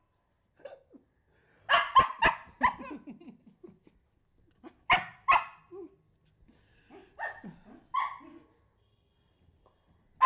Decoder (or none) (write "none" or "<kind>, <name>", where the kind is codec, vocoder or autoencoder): none